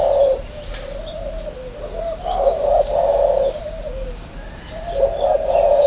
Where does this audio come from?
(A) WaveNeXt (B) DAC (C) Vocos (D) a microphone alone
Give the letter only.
D